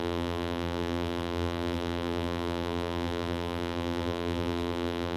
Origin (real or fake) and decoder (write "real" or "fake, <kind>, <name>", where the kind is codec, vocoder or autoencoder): fake, vocoder, BigVGAN v2